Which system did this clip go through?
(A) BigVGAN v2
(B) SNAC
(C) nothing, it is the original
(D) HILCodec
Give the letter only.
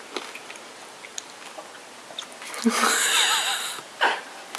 C